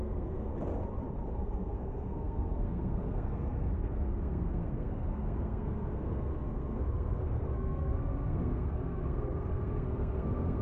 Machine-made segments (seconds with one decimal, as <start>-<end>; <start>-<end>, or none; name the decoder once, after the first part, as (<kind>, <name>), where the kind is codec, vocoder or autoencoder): 0.0-0.5 (codec, SNAC); 1.3-10.6